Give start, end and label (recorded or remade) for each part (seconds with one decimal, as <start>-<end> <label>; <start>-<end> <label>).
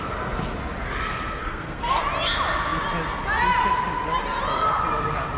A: 0.0-1.4 recorded; 1.4-2.0 remade; 2.0-5.4 recorded